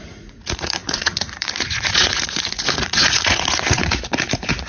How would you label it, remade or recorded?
remade